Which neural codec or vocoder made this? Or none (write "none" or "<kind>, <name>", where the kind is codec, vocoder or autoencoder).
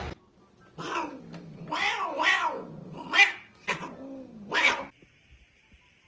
none